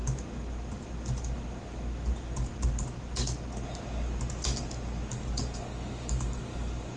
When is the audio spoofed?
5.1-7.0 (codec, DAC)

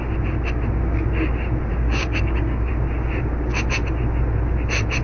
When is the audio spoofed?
1.7-2.7 (codec, DAC)

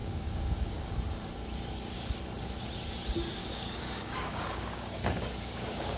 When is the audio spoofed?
0.0-0.9 (codec, DAC); 3.4-6.0

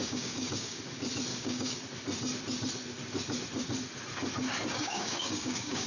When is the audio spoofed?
0.0-0.8 (codec, DAC); 1.3-1.8; 4.7-5.9

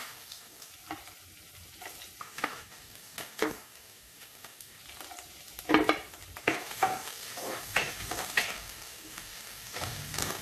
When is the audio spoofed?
0.0-0.7 (codec, DAC); 2.2-4.8; 6.4-10.4

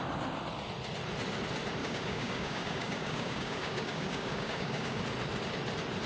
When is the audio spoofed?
1.8-5.0 (codec, DAC)

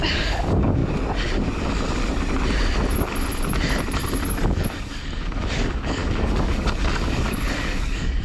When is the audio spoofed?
0.0-0.8 (codec, DAC); 4.4-8.2

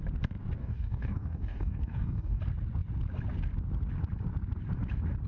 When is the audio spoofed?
0.6-2.4 (codec, DAC)